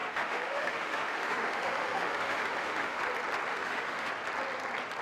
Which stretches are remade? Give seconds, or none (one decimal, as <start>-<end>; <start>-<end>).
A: 0.0-3.0; 3.5-4.1